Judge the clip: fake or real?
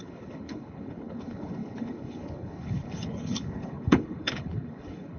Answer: fake